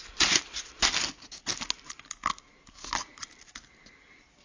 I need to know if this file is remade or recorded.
recorded